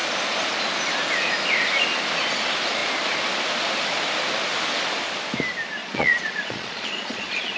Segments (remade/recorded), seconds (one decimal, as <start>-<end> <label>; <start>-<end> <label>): 0.0-5.8 recorded; 5.8-7.6 remade